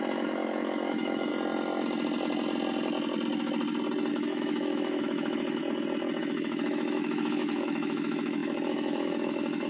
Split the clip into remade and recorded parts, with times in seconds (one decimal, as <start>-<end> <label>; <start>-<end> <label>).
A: 0.0-1.3 remade; 1.3-4.1 recorded; 4.1-5.6 remade; 5.6-6.2 recorded; 6.2-9.7 remade